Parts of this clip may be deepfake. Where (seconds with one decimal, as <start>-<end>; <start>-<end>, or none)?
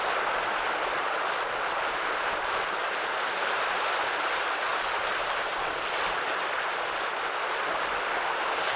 none